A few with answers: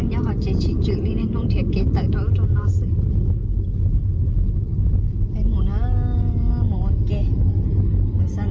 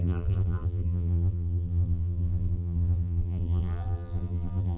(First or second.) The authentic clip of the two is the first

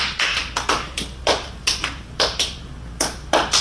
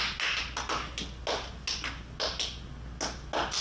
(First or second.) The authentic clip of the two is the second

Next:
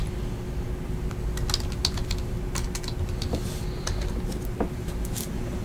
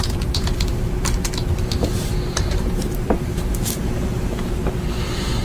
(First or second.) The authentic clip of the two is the first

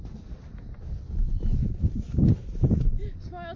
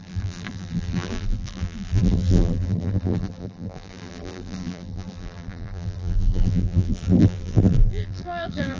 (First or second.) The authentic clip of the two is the first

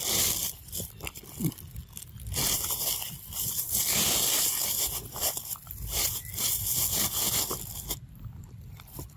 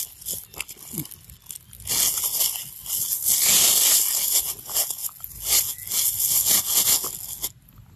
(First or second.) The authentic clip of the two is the second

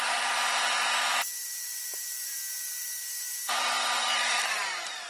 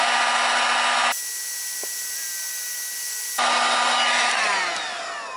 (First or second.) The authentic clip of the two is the second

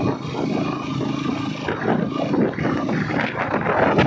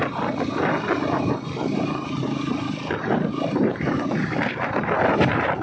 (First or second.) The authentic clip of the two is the first